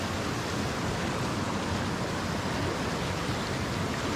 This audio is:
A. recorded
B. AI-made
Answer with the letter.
A